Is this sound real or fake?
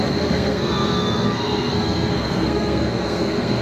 fake